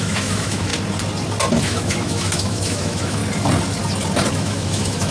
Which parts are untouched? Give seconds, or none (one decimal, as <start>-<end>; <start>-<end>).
0.7-1.6; 3.2-4.3